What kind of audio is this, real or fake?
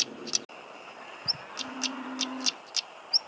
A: real